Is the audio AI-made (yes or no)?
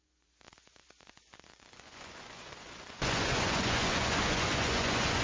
yes